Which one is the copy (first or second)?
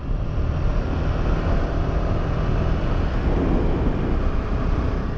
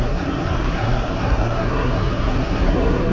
second